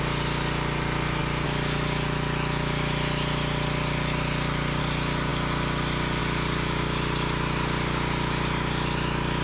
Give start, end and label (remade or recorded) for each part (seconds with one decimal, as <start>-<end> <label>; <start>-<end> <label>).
0.0-9.4 recorded